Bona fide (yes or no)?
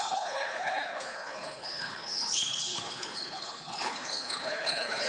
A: no